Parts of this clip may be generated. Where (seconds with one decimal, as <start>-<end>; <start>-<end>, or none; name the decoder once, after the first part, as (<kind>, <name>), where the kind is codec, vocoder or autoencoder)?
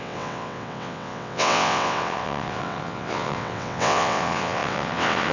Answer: 0.0-5.3 (vocoder, WaveNeXt)